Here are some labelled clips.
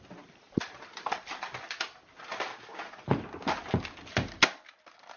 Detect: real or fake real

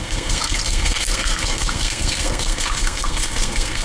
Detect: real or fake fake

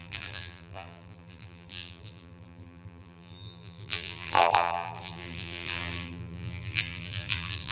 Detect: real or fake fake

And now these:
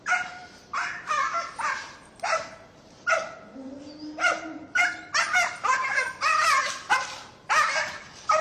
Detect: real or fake real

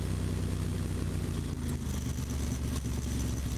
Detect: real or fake real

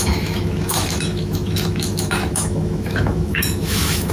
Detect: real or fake fake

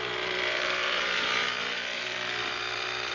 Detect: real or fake fake